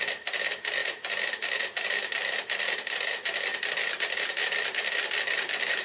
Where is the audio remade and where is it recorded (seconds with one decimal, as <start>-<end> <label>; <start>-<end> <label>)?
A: 0.0-5.8 recorded